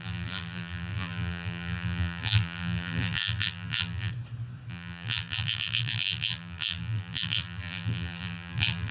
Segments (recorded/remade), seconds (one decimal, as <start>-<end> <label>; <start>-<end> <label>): 0.0-4.1 remade; 4.1-4.7 recorded; 4.7-8.9 remade

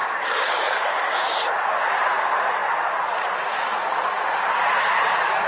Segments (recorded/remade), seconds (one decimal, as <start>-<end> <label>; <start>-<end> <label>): 0.0-1.4 remade; 1.4-5.5 recorded